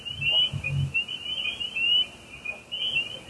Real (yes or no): yes